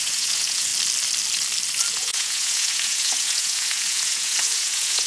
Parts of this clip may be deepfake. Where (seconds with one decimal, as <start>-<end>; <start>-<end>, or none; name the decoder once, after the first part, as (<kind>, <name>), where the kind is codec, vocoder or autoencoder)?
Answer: 0.0-0.7 (vocoder, Vocos); 1.9-5.1